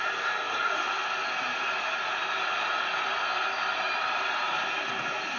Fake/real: real